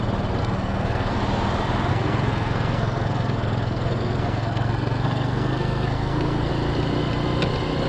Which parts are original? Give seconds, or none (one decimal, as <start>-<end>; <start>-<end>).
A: 0.0-0.4; 1.2-1.9; 6.5-7.9